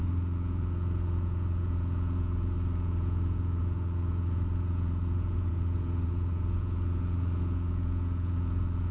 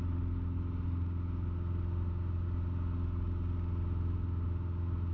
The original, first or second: second